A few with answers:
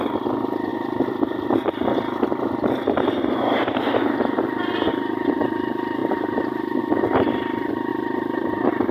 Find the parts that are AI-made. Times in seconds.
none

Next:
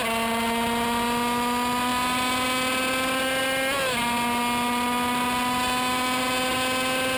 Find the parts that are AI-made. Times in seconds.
none

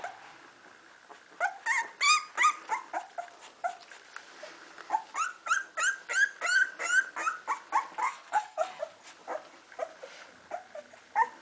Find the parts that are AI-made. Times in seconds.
8.0-8.8